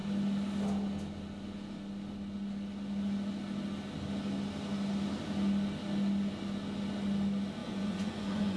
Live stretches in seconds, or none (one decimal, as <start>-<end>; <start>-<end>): 0.0-7.6